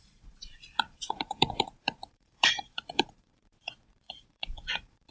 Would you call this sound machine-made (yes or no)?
yes